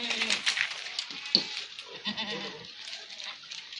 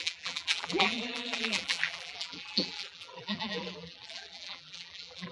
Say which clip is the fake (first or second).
second